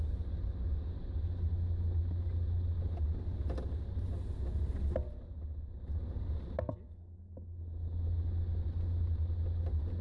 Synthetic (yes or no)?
no